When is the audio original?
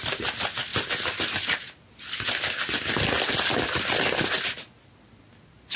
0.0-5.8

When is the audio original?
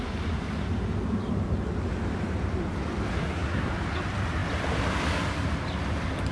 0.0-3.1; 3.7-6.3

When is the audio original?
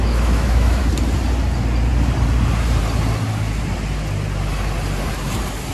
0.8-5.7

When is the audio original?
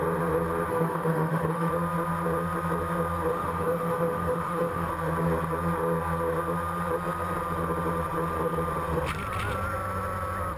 0.0-0.7; 1.7-3.3; 4.9-10.6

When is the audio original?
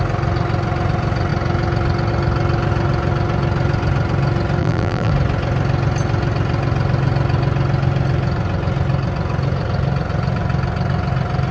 0.0-4.6; 5.1-11.5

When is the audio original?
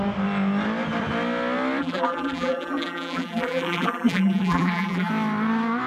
0.0-1.8; 5.1-5.9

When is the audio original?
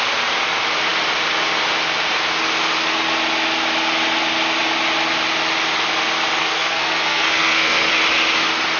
0.0-6.4; 7.9-8.8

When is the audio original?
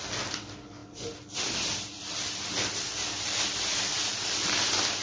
0.0-5.0